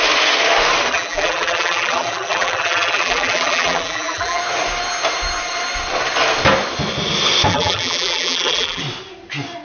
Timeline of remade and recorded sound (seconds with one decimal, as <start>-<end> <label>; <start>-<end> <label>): 0.0-0.9 recorded; 0.9-4.4 remade; 4.4-7.5 recorded; 7.5-8.8 remade; 8.8-9.6 recorded